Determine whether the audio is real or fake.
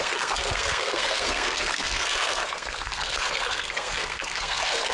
fake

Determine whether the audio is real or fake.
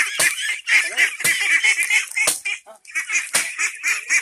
real